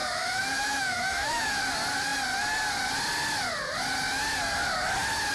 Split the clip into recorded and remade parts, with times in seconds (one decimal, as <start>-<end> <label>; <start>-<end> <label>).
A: 0.0-1.6 remade; 1.6-5.3 recorded